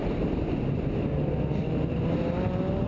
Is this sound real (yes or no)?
yes